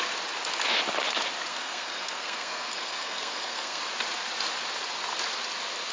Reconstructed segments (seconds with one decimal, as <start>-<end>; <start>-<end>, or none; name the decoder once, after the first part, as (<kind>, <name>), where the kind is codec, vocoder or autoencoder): 1.5-3.8 (codec, SNAC)